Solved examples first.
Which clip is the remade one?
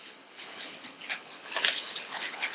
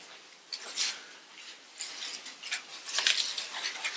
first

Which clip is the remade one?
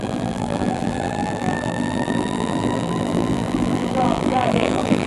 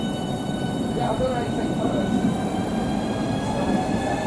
first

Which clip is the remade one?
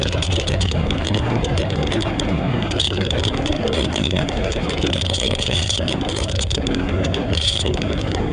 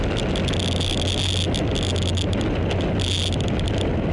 first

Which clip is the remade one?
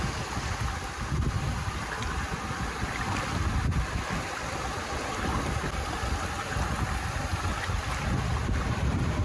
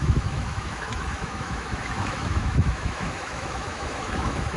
second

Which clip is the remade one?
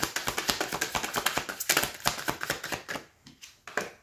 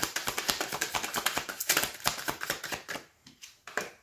second